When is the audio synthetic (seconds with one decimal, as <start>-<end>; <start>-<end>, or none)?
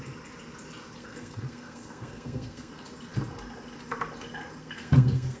1.0-2.7; 4.6-5.4